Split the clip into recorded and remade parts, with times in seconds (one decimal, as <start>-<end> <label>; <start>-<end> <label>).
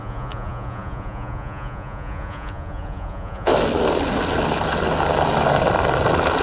0.0-3.5 remade; 3.5-6.4 recorded